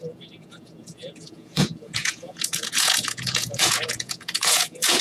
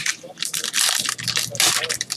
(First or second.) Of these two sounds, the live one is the second